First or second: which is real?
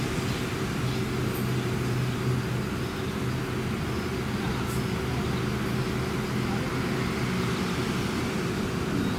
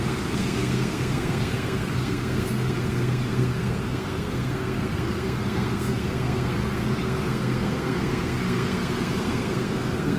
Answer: first